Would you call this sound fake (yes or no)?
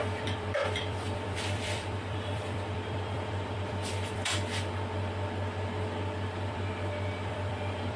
yes